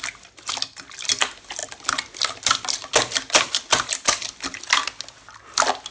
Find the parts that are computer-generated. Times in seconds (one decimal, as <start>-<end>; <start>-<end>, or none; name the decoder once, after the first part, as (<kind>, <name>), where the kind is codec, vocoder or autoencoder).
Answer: none